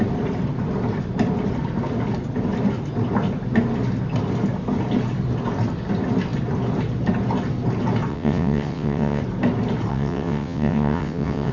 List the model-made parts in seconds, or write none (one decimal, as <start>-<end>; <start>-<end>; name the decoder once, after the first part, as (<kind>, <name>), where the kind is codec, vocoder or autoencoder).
8.1-9.2 (vocoder, WaveNeXt); 9.9-11.5